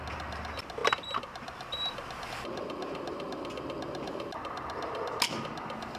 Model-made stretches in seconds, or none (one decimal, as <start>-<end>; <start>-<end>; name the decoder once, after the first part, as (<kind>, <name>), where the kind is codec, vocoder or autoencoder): none